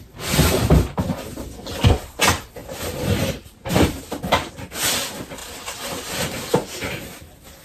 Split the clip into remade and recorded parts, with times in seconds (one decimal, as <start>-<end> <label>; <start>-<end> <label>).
0.0-2.6 recorded; 2.6-4.5 remade; 4.5-7.6 recorded

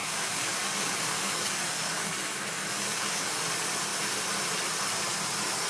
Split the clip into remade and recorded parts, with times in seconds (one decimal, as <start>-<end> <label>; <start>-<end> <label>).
0.0-3.4 remade; 3.4-5.7 recorded

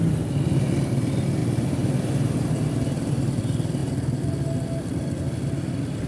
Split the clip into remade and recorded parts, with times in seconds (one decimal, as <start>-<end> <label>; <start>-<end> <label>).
0.0-6.1 recorded

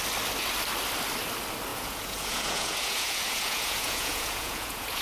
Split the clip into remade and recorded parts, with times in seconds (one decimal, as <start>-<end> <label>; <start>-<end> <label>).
0.0-1.7 recorded; 1.7-5.0 remade

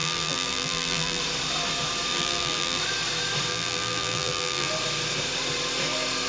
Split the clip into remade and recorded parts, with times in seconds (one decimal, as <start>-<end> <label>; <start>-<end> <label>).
0.0-1.2 remade; 1.2-2.1 recorded; 2.1-2.8 remade; 2.8-3.5 recorded; 3.5-4.7 remade; 4.7-6.3 recorded